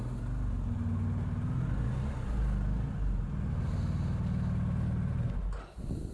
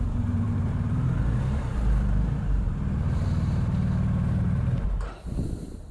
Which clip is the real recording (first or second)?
first